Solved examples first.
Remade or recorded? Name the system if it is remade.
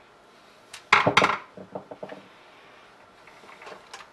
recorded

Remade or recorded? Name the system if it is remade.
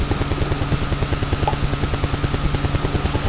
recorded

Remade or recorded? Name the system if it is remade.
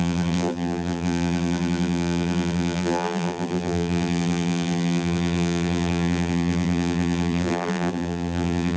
remade, vocoder, BigVGAN v2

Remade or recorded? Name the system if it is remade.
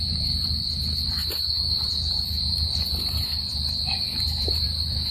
remade, vocoder, BigVGAN v2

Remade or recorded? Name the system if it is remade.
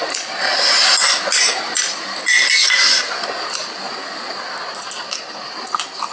recorded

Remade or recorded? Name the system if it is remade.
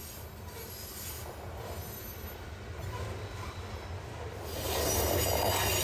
recorded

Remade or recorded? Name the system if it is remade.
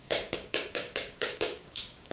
remade, codec, DAC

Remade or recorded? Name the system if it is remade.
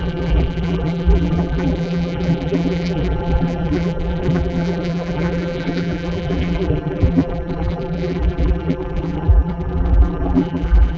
remade, vocoder, BigVGAN v2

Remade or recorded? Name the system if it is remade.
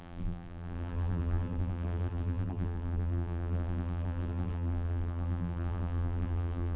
remade, vocoder, BigVGAN v2